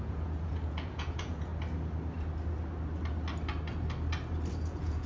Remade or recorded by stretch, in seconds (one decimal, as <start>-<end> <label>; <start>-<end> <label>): 0.0-1.5 remade; 1.5-4.6 recorded; 4.6-5.1 remade